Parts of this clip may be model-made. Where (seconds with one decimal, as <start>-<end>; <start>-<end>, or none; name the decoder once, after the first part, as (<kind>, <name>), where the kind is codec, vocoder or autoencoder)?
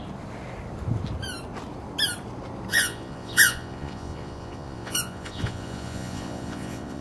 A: 2.7-7.0 (vocoder, Vocos)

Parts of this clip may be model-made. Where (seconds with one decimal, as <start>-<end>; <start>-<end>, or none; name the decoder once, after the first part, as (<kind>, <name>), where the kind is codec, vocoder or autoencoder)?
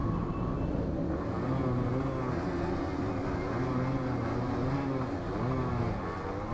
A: none